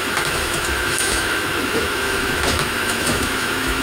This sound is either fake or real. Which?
fake